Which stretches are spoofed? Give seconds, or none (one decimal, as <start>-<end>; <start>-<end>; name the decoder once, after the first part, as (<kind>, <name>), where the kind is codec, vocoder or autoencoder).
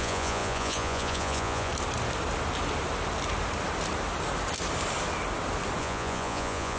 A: 0.0-1.7 (vocoder, Vocos); 5.8-6.8